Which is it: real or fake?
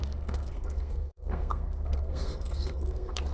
fake